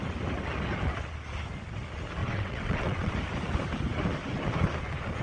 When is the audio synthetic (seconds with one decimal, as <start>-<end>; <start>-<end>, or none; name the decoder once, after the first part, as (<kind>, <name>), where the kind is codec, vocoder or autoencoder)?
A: 2.2-3.1 (vocoder, WaveNeXt)